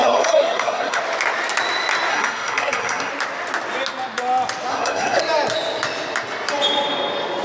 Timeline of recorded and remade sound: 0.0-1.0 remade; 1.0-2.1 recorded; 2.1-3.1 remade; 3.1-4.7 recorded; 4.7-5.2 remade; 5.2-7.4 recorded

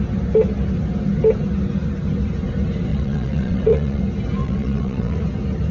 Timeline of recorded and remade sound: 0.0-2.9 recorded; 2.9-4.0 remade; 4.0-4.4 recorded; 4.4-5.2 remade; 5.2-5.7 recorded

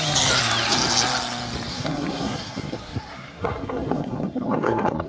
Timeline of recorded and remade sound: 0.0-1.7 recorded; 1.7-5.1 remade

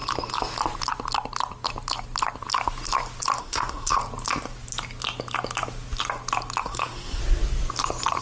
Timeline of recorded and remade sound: 0.0-3.4 recorded; 3.4-4.0 remade; 4.0-6.6 recorded; 6.6-7.2 remade; 7.2-8.2 recorded